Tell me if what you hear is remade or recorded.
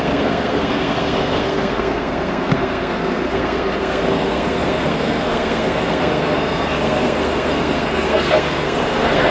remade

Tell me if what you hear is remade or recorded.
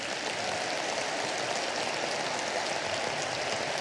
recorded